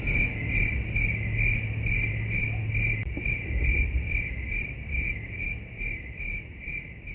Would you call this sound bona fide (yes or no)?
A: yes